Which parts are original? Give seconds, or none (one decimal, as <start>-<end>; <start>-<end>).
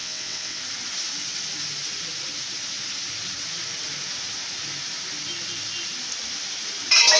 0.6-7.2